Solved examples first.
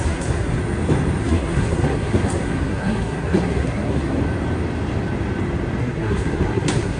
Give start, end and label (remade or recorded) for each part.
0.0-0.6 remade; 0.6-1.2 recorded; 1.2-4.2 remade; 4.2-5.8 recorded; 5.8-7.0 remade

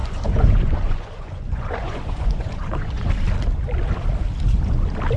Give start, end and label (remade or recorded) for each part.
0.0-3.1 remade; 3.1-5.2 recorded

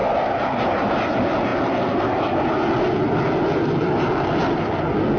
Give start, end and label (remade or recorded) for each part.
0.0-5.2 recorded

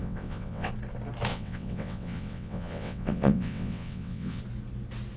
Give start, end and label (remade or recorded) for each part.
0.0-0.7 remade; 0.7-1.3 recorded; 1.3-4.4 remade; 4.4-5.2 recorded

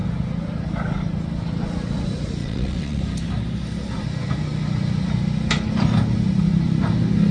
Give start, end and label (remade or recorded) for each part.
0.0-2.4 recorded; 2.4-3.0 remade; 3.0-7.3 recorded

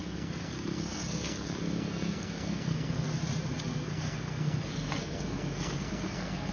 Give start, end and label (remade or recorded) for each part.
0.0-3.1 remade; 3.1-3.7 recorded; 3.7-6.5 remade

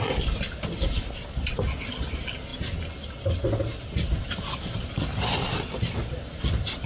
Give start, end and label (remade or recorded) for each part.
0.0-6.9 recorded